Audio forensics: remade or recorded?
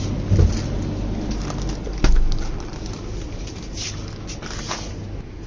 recorded